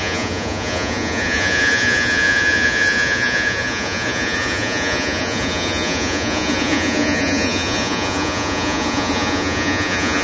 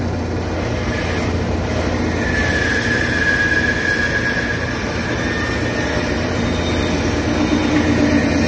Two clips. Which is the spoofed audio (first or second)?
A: first